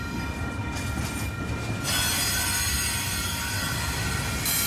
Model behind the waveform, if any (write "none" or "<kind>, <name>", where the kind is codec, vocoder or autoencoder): none